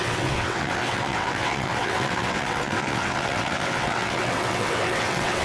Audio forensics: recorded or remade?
remade